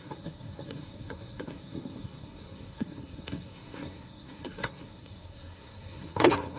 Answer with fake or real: fake